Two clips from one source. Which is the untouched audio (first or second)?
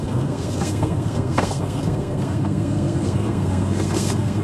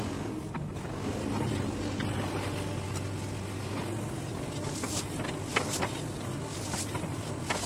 second